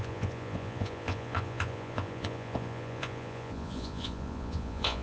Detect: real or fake fake